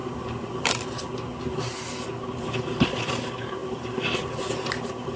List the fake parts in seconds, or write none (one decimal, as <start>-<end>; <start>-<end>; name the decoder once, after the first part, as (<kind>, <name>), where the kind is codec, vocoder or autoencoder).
none